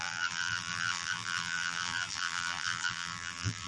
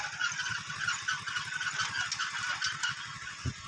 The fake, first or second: first